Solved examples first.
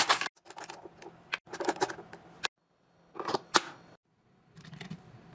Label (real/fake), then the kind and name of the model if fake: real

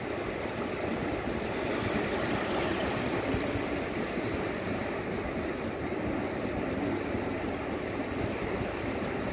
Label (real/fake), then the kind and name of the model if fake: real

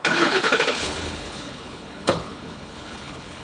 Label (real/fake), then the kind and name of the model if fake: fake, codec, HILCodec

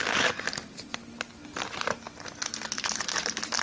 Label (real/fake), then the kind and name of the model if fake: real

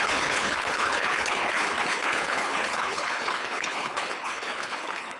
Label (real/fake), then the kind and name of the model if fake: fake, codec, HILCodec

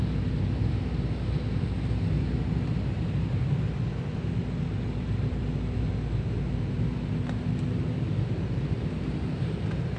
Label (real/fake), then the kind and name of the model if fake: real